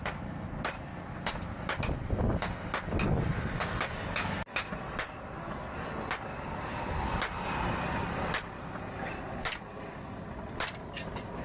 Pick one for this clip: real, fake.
real